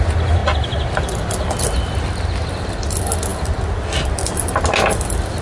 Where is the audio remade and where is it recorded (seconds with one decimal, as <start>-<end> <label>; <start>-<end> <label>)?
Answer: 0.0-5.4 recorded